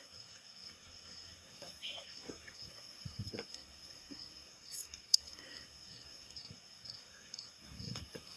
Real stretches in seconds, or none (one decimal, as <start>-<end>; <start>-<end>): none

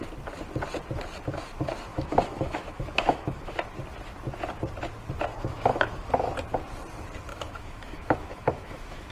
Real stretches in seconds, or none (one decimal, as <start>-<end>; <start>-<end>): 0.0-1.9; 3.5-5.3; 6.1-7.3

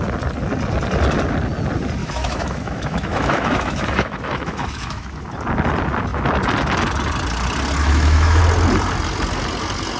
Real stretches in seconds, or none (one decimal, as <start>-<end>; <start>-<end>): 0.0-2.0; 5.2-7.8; 8.4-10.0